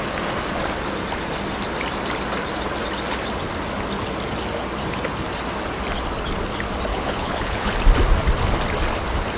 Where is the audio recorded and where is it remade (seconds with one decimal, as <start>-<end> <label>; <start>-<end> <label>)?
0.0-6.9 recorded; 6.9-7.7 remade; 7.7-9.4 recorded